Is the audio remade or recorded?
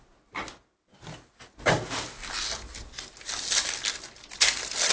recorded